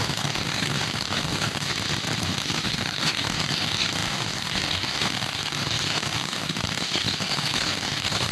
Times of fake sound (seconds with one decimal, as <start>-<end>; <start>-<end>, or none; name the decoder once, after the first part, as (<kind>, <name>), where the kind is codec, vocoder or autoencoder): 0.0-1.7 (codec, DAC); 2.2-8.3